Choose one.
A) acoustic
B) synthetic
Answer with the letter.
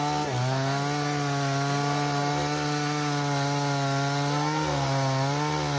A